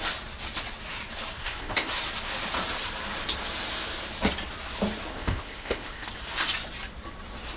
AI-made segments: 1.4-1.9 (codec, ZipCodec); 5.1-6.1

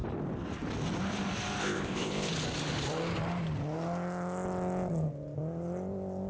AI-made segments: 1.6-2.3 (codec, ZipCodec)